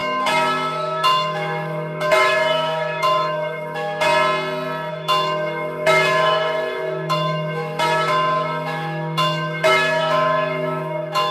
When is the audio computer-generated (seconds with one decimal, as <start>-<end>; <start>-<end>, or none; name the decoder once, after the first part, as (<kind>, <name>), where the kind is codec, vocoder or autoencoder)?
0.0-4.1 (autoencoder, DAC-VAE); 4.9-11.3